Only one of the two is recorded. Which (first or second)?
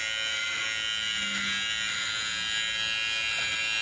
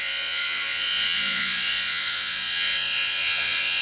first